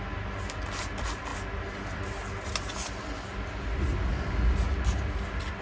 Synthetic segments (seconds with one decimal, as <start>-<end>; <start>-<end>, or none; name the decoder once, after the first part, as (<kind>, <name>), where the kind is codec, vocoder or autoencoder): none